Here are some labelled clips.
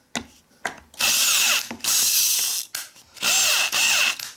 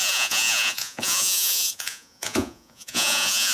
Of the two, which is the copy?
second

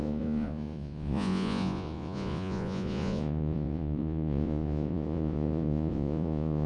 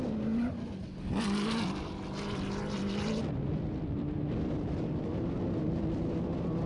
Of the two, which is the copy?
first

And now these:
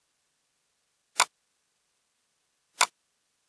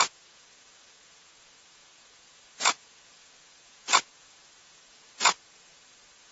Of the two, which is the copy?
second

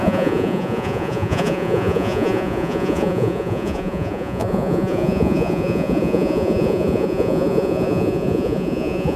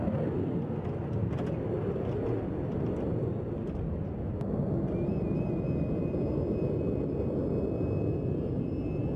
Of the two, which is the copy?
first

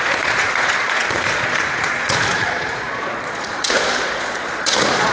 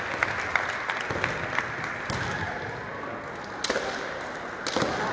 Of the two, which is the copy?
first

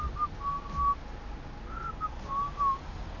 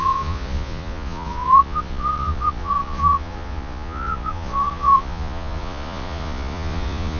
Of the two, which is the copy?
second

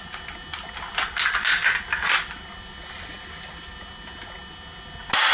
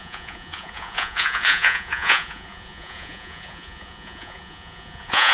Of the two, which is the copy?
second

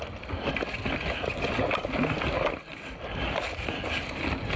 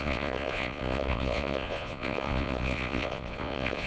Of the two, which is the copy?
second